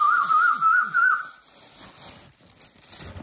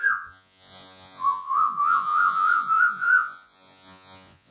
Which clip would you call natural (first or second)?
first